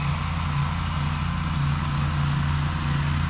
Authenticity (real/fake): real